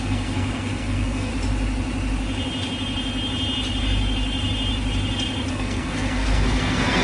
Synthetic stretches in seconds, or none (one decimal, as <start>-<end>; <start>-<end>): 0.0-1.3; 5.5-7.0